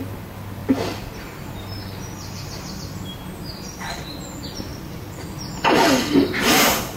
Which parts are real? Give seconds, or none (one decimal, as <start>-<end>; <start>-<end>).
0.0-0.6; 2.8-7.0